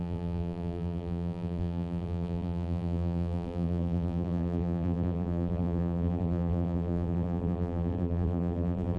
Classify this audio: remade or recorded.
remade